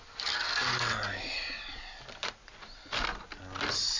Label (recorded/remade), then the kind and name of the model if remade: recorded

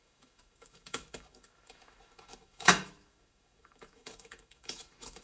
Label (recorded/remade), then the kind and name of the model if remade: remade, autoencoder, DAC-VAE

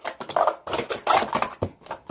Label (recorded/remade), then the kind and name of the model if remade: recorded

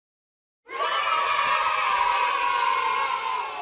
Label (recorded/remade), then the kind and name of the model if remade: recorded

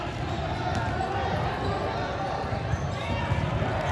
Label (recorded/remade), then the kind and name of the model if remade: recorded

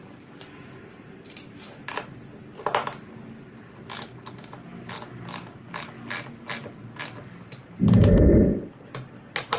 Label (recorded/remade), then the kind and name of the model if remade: recorded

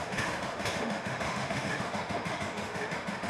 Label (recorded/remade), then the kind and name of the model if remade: remade, autoencoder, DAC-VAE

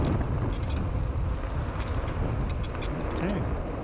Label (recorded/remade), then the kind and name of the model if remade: recorded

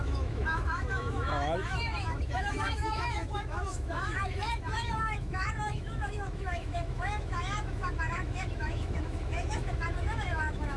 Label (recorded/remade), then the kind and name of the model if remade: remade, autoencoder, DAC-VAE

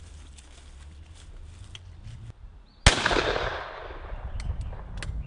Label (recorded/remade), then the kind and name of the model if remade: recorded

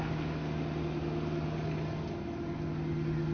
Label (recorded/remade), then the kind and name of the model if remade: recorded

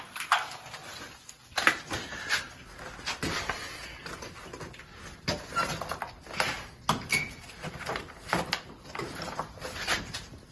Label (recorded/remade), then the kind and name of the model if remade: recorded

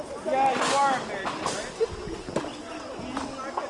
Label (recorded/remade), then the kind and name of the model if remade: recorded